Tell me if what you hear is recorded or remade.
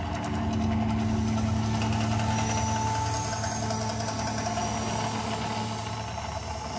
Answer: recorded